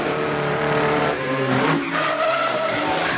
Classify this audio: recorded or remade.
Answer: remade